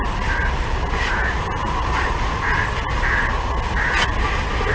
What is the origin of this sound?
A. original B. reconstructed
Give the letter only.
A